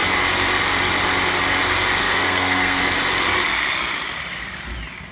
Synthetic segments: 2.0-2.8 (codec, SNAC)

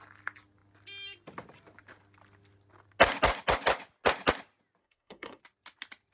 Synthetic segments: 4.8-5.4 (codec, SNAC)

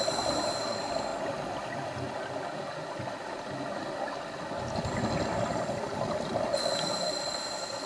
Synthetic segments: none

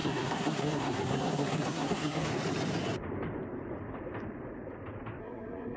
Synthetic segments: 0.0-2.3 (codec, SNAC); 5.2-5.8